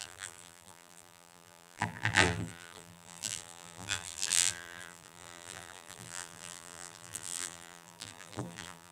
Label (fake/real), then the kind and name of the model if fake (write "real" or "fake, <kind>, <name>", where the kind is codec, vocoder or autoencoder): fake, vocoder, BigVGAN v2